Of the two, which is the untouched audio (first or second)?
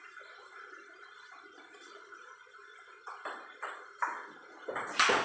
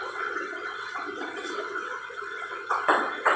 first